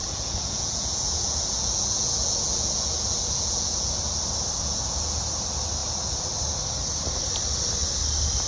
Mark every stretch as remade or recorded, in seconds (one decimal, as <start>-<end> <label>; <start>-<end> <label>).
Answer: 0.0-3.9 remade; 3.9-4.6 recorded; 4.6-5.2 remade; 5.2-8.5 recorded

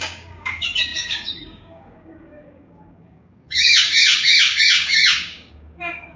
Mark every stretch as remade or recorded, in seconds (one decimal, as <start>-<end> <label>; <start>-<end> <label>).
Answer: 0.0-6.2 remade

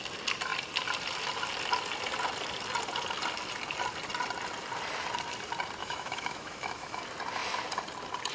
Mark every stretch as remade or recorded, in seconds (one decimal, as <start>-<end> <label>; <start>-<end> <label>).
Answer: 0.0-5.8 recorded; 5.8-7.0 remade; 7.0-8.3 recorded

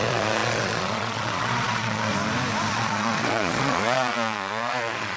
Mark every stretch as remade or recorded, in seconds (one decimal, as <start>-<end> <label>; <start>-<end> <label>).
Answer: 0.0-2.1 remade; 2.1-2.7 recorded; 2.7-5.2 remade

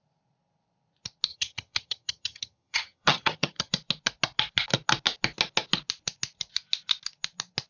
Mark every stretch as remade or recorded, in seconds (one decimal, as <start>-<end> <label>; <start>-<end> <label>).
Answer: 0.0-1.3 recorded; 1.3-3.7 remade; 3.7-7.7 recorded

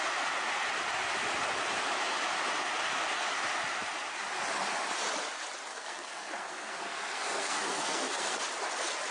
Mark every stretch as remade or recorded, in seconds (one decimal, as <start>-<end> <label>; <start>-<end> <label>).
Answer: 0.0-5.7 recorded; 5.7-8.4 remade; 8.4-9.1 recorded

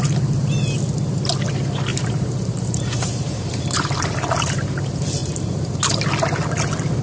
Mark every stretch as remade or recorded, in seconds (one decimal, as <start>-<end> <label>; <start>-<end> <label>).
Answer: 0.0-1.9 recorded; 1.9-4.8 remade; 4.8-5.2 recorded; 5.2-5.7 remade; 5.7-7.0 recorded